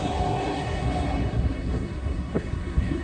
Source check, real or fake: fake